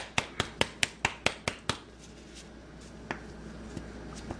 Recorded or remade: recorded